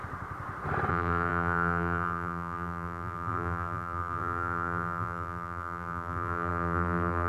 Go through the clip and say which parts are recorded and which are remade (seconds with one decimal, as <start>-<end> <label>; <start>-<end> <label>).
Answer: 0.0-0.9 recorded; 0.9-7.3 remade